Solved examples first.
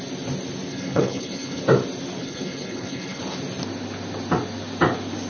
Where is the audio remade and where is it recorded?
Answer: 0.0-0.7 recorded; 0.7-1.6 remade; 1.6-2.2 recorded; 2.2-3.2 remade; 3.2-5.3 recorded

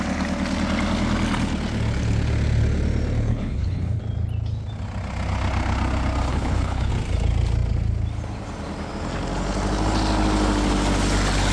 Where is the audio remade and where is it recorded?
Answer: 0.0-3.3 recorded; 3.3-4.0 remade; 4.0-6.3 recorded; 6.3-6.9 remade; 6.9-11.5 recorded

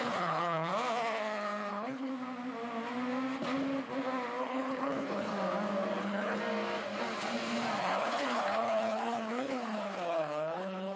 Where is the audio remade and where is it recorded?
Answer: 0.0-0.7 remade; 0.7-1.7 recorded; 1.7-2.1 remade; 2.1-4.4 recorded; 4.4-5.3 remade; 5.3-6.0 recorded; 6.0-6.4 remade; 6.4-7.8 recorded; 7.8-11.0 remade

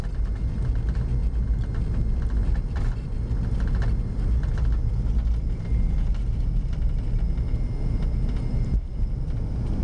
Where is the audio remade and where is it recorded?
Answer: 0.0-9.8 recorded